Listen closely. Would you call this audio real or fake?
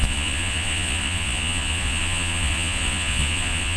fake